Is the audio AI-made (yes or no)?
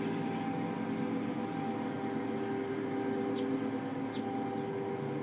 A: no